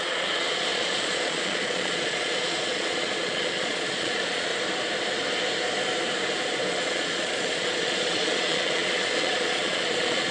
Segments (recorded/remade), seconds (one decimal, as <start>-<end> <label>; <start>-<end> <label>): 0.0-4.5 remade; 4.5-6.7 recorded; 6.7-10.3 remade

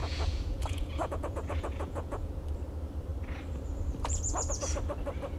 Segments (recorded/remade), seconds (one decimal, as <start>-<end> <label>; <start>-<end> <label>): 0.0-2.3 remade; 2.3-5.4 recorded

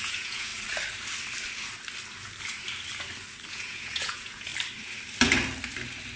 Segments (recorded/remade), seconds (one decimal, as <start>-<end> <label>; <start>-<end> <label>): 0.0-0.5 remade; 0.5-3.5 recorded; 3.5-4.5 remade; 4.5-6.2 recorded

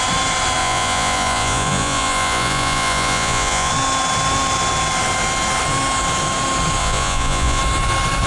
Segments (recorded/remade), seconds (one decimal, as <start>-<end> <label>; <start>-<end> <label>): 0.0-0.6 recorded; 0.6-3.7 remade; 3.7-6.8 recorded; 6.8-7.6 remade; 7.6-8.3 recorded